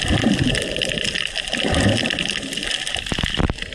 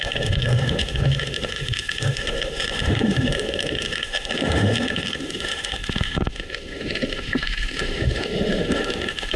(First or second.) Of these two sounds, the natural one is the first